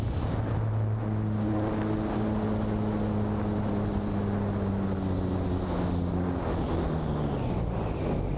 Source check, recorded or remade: recorded